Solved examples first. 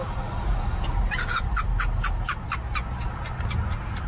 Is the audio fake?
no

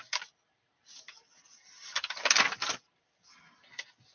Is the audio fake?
no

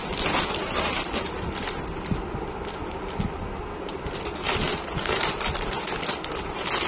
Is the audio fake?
no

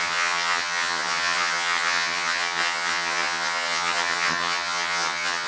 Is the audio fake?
yes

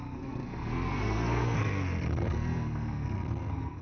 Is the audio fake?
yes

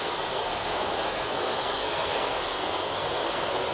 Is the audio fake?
yes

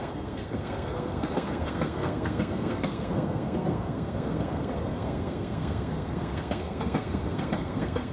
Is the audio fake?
yes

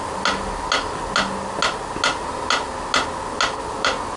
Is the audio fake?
no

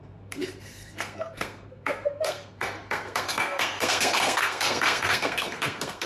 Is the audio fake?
yes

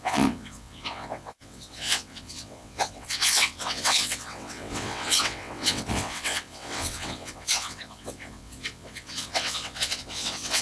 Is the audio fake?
yes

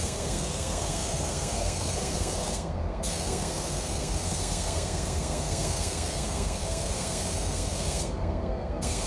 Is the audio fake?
yes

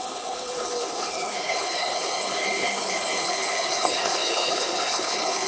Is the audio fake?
yes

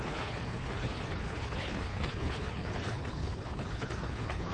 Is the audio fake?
yes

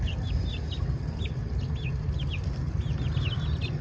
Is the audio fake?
no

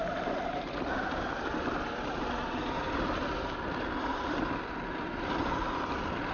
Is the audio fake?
no